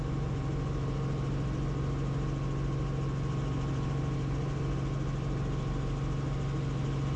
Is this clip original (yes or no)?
yes